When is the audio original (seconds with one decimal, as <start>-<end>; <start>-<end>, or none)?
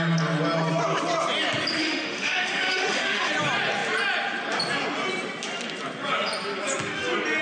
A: 0.0-1.8; 3.3-7.4